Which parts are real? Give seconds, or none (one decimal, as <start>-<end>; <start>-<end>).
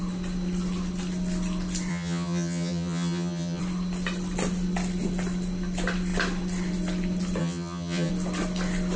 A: 0.0-1.9; 3.6-7.4; 8.1-9.0